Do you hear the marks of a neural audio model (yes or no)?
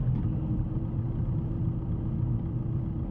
no